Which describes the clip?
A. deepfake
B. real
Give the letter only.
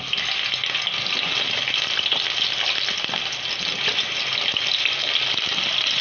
B